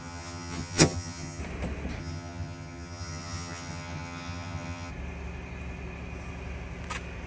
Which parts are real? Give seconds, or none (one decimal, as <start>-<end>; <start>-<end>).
1.4-2.0; 4.9-7.3